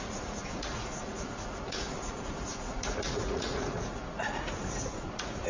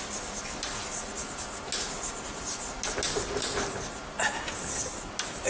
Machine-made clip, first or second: first